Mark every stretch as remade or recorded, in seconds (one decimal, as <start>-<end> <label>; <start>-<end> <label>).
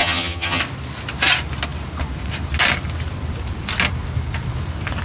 0.0-0.6 remade; 0.6-5.0 recorded